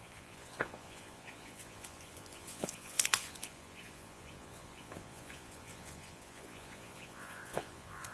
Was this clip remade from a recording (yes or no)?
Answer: yes